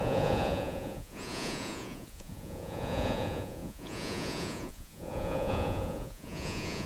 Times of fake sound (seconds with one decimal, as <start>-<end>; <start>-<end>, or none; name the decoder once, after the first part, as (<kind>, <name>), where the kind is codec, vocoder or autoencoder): 0.0-6.9 (vocoder, Vocos)